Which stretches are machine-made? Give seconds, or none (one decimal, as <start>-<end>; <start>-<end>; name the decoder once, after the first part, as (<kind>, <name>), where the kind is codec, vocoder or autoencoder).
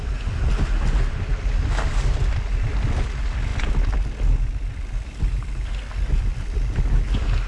none